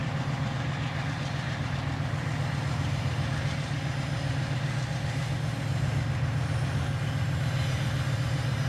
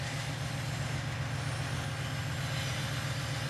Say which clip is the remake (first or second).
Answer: first